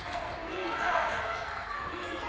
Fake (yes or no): yes